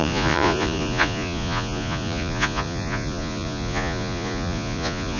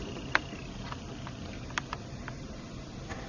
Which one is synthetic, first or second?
first